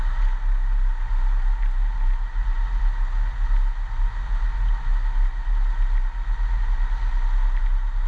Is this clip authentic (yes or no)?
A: yes